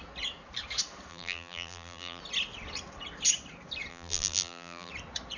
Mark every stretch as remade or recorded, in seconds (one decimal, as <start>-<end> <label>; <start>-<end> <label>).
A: 0.0-1.1 recorded; 1.1-2.2 remade; 2.2-3.9 recorded; 3.9-4.9 remade; 4.9-5.4 recorded